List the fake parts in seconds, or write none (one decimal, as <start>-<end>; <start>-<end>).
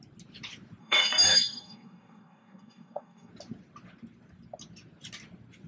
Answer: 0.8-3.3